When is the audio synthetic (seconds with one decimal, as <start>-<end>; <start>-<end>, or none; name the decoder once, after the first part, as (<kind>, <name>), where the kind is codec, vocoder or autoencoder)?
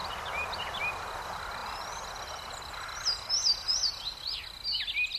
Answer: none